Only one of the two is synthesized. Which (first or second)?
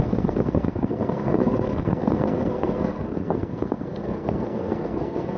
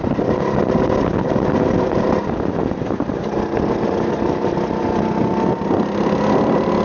first